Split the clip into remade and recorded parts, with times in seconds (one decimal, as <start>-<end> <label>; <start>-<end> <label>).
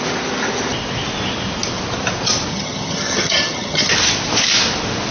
0.0-2.5 recorded; 2.5-3.9 remade; 3.9-5.1 recorded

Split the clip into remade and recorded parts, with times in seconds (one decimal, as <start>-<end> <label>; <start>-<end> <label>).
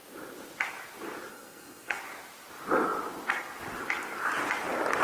0.0-1.3 recorded; 1.3-2.0 remade; 2.0-5.0 recorded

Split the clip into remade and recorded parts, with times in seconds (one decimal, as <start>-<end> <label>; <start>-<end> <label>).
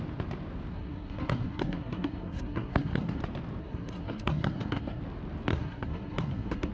0.0-0.7 recorded; 0.7-3.2 remade; 3.2-3.6 recorded; 3.6-5.0 remade; 5.0-5.5 recorded; 5.5-6.7 remade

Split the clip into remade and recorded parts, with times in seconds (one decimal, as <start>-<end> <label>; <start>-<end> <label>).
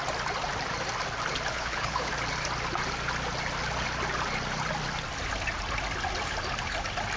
0.0-1.5 recorded; 1.5-2.1 remade; 2.1-7.2 recorded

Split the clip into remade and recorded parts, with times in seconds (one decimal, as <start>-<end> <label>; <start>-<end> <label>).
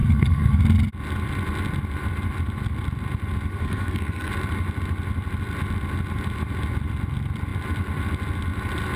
0.0-0.6 remade; 0.6-3.5 recorded; 3.5-4.3 remade; 4.3-9.0 recorded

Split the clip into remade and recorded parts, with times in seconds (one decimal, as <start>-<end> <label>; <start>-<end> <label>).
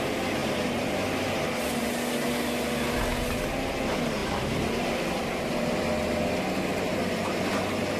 0.0-0.4 recorded; 0.4-1.2 remade; 1.2-4.2 recorded; 4.2-7.0 remade; 7.0-8.0 recorded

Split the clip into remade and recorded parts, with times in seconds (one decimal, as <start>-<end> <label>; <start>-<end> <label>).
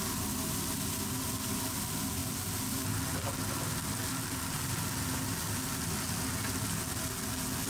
0.0-7.7 recorded